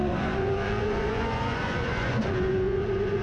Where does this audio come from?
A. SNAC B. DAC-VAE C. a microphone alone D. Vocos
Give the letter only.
D